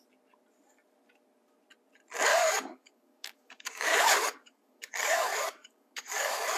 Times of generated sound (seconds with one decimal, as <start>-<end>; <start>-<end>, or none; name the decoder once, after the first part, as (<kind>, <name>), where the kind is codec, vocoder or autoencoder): 2.3-6.6 (codec, DAC)